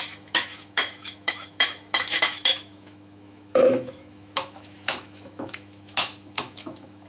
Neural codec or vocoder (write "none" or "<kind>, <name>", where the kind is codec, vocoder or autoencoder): autoencoder, DAC-VAE